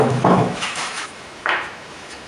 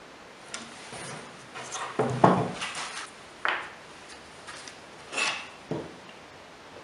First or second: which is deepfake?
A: first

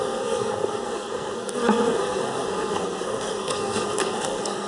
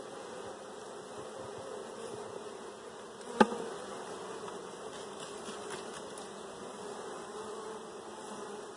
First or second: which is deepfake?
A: first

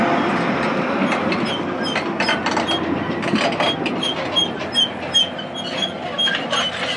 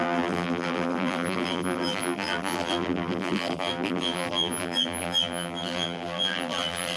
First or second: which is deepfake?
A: second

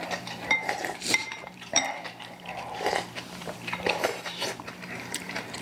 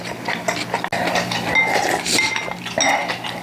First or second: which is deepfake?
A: first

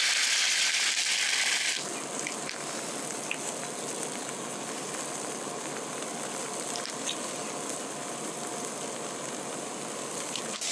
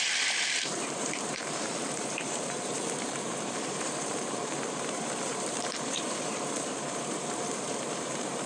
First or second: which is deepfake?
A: second